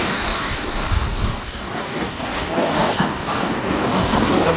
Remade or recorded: remade